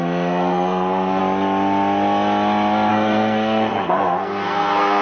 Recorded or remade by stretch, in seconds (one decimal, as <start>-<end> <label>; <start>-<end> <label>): 0.0-1.2 remade; 1.2-2.9 recorded; 2.9-5.0 remade